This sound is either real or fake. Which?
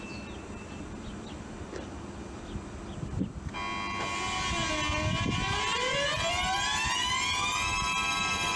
real